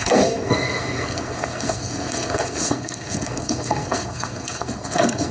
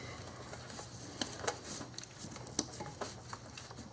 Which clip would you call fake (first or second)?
first